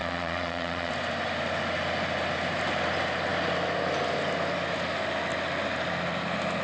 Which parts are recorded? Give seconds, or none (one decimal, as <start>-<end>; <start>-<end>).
0.9-6.6